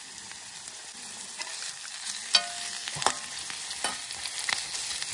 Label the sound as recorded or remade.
recorded